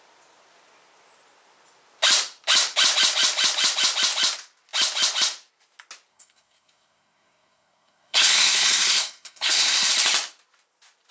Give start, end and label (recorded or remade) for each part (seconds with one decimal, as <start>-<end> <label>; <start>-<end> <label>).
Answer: 0.0-6.1 recorded; 6.1-9.9 remade; 9.9-11.1 recorded